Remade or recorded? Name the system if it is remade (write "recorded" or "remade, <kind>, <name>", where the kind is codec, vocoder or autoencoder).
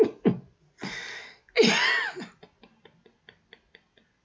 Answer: recorded